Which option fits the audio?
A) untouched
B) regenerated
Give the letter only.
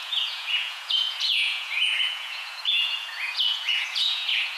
B